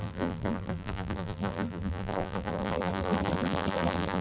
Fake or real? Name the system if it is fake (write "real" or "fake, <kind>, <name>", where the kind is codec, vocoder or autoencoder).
fake, vocoder, BigVGAN v2